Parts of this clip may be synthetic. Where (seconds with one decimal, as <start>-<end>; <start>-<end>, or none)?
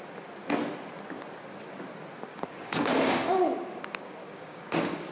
2.3-3.8; 4.2-5.1